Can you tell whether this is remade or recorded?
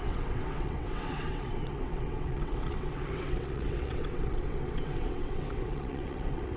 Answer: remade